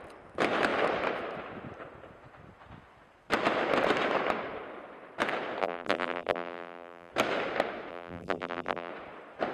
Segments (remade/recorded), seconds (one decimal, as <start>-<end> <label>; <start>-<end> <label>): 0.0-5.6 recorded; 5.6-7.1 remade; 7.1-7.9 recorded; 7.9-8.9 remade; 8.9-9.5 recorded

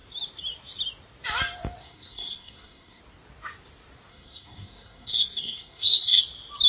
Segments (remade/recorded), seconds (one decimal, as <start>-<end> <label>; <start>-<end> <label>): 0.0-1.8 recorded; 1.8-3.0 remade; 3.0-4.1 recorded; 4.1-6.2 remade; 6.2-6.7 recorded

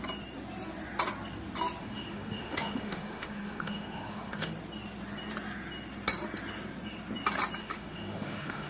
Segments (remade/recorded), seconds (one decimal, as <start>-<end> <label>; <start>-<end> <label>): 0.0-1.8 recorded; 1.8-4.5 remade; 4.5-7.6 recorded; 7.6-8.7 remade

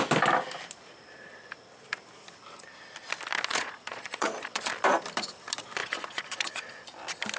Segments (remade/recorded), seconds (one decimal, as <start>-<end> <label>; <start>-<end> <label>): 0.0-3.5 recorded; 3.5-4.7 remade; 4.7-5.8 recorded; 5.8-6.8 remade; 6.8-7.4 recorded